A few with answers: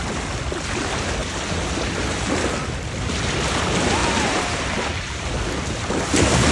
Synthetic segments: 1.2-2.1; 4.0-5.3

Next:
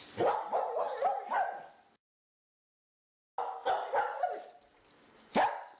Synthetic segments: none